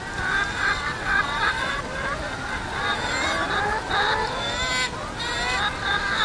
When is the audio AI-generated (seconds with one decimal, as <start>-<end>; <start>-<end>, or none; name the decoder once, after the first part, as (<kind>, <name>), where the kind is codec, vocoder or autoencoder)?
0.6-1.8 (vocoder, WaveNeXt)